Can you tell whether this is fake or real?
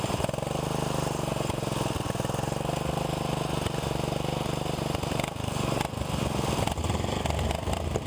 real